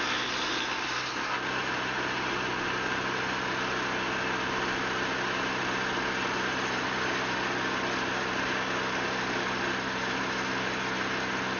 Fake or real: real